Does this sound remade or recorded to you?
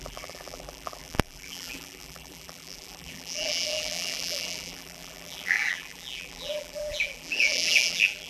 remade